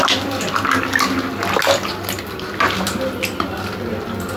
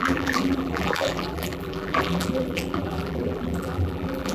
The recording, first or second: first